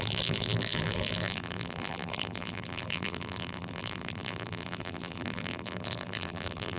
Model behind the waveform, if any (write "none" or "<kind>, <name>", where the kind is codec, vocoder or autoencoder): vocoder, BigVGAN v2